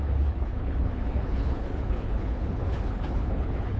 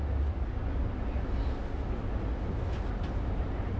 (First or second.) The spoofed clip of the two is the first